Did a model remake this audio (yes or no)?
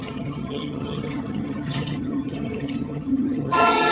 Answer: yes